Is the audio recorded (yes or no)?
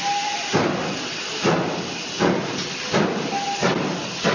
yes